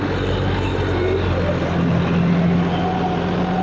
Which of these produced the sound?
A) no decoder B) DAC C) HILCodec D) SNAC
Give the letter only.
A